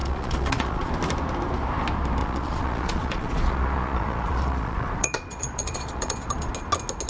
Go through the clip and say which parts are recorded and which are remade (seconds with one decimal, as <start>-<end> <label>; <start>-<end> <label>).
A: 0.0-0.9 remade; 0.9-2.2 recorded; 2.2-6.5 remade; 6.5-7.1 recorded